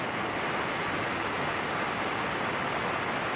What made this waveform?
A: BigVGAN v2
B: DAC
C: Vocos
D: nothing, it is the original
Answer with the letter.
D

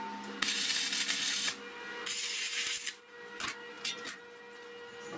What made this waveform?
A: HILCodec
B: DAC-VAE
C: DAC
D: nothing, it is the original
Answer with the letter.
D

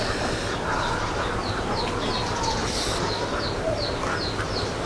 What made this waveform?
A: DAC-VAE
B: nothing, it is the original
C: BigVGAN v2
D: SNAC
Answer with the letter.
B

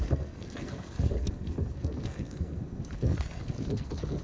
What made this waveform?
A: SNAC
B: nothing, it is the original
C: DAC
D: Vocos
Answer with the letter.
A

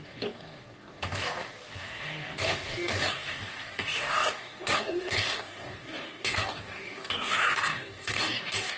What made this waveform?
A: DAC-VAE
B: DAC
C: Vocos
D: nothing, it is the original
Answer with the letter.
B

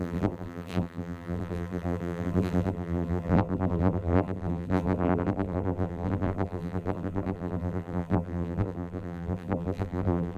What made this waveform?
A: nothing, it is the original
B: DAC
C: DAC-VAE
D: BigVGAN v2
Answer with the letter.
D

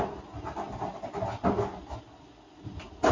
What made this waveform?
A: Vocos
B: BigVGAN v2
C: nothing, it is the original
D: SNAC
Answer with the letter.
C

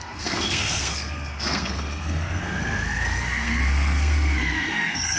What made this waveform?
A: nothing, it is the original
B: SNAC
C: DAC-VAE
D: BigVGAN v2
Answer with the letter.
B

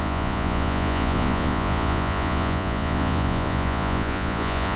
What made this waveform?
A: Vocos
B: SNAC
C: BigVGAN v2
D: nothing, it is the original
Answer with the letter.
A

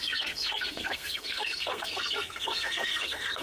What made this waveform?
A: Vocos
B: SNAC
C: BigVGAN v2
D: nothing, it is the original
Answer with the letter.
B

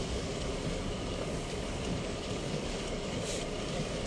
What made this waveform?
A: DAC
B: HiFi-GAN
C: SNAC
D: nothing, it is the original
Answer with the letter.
A